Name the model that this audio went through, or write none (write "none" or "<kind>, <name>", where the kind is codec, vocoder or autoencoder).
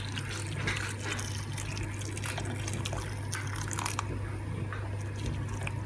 none